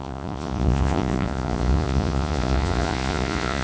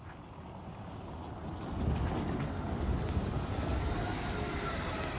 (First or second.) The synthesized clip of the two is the first